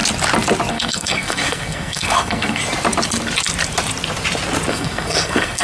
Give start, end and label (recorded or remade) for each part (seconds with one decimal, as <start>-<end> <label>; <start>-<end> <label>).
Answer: 0.0-0.7 recorded; 0.7-2.6 remade; 2.6-4.7 recorded; 4.7-5.6 remade